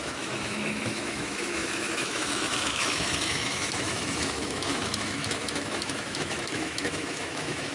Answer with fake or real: fake